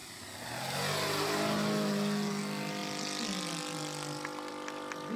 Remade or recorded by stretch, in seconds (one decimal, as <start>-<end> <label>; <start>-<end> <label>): 0.0-5.2 recorded